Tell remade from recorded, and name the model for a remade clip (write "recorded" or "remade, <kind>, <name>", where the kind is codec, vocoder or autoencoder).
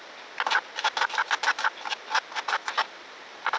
remade, vocoder, BigVGAN v2